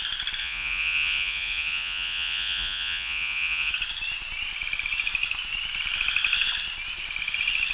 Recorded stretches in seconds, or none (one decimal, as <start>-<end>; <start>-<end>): 0.0-0.4; 3.7-7.7

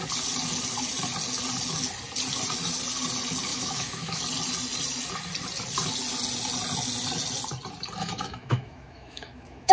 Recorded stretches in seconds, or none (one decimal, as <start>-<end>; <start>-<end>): 0.0-3.5; 4.2-8.0

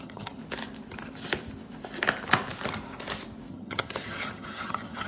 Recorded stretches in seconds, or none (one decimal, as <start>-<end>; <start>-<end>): 0.4-3.5

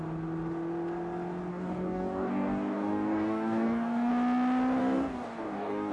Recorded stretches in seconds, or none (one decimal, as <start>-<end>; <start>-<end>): 0.0-1.5; 4.1-4.8

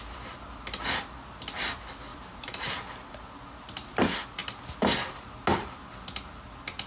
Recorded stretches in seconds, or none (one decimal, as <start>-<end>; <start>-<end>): 0.0-2.1; 2.7-6.9

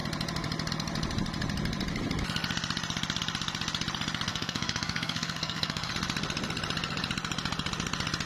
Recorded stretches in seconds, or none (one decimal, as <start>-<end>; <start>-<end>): 0.0-4.3; 5.9-8.3

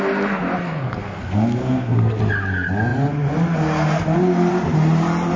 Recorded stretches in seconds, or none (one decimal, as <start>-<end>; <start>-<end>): 0.0-0.6; 2.2-5.4

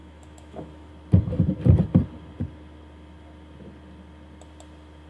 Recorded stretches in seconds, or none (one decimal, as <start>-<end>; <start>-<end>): 0.9-5.1